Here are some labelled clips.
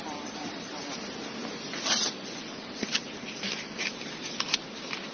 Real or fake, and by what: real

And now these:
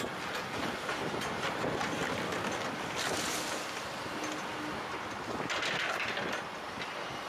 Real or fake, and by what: real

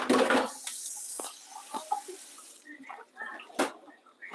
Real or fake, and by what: real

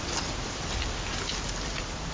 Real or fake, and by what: real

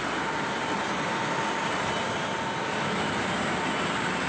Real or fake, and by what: real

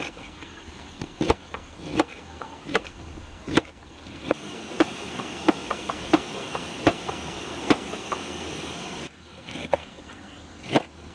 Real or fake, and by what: fake, codec, SNAC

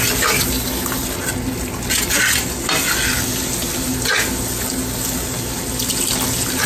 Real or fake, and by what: real